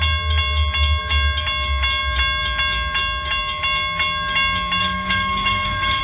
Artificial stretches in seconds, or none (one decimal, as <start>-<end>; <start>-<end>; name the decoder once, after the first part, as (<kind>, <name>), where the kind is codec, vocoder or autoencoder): 4.8-6.0 (codec, DAC)